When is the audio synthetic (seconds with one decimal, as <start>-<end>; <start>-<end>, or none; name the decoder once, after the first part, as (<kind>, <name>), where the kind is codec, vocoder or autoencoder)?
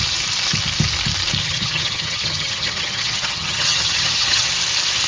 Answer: 1.4-4.5 (vocoder, HiFi-GAN)